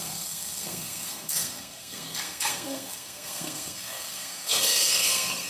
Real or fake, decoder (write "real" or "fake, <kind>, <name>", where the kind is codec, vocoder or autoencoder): fake, codec, SNAC